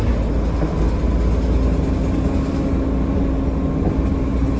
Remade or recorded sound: recorded